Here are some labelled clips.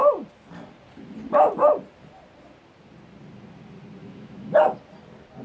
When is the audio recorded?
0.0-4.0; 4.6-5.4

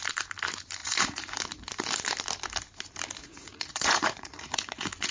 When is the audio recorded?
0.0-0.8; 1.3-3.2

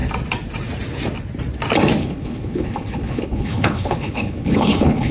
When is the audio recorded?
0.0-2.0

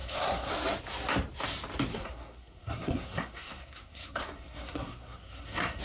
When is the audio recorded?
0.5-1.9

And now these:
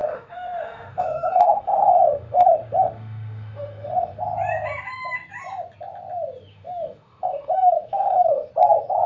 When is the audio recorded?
4.2-6.5; 8.5-9.1

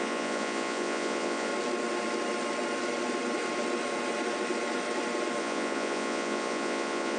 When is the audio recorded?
1.5-5.4